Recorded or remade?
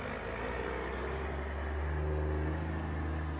recorded